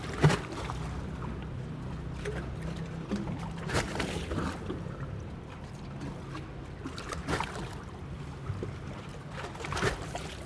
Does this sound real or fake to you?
real